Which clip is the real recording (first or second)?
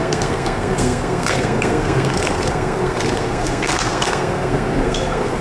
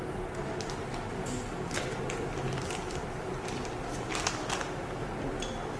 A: second